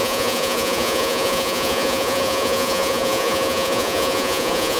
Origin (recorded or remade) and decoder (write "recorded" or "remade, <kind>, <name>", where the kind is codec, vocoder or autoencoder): remade, vocoder, Vocos